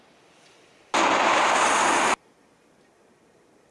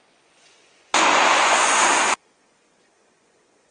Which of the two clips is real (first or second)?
first